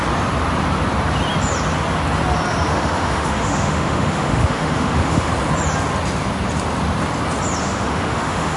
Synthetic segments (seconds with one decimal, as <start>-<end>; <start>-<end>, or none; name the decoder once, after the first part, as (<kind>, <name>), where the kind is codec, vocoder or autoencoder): 2.7-5.3 (autoencoder, DAC-VAE); 7.6-8.6